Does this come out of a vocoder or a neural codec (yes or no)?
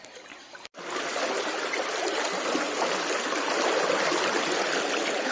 no